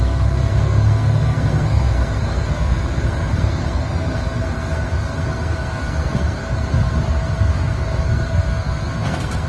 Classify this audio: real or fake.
fake